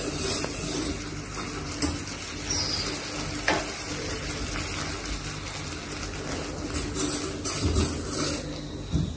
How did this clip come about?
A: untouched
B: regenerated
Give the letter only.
A